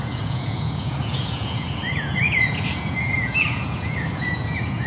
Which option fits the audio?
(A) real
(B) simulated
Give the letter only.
B